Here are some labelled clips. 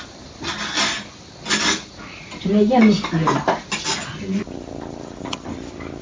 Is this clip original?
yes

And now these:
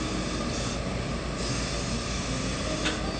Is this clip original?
yes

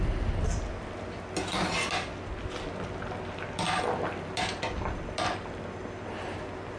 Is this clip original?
yes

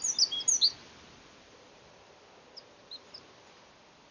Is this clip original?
yes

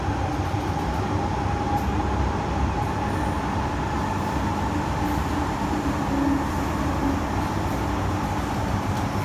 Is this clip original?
yes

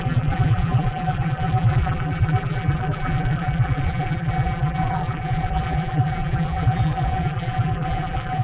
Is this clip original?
no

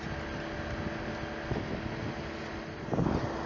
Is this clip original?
yes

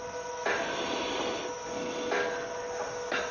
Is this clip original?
yes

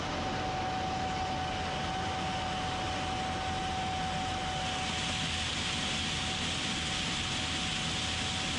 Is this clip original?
yes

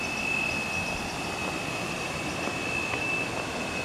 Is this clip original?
yes